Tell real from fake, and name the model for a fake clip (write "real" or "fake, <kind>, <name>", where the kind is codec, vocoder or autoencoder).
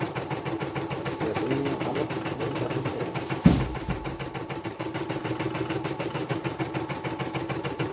fake, vocoder, BigVGAN v2